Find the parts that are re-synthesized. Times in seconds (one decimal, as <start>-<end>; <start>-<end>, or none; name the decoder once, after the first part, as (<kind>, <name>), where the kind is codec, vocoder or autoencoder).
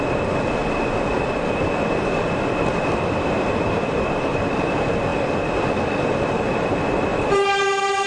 0.6-4.3 (vocoder, BigVGAN v2)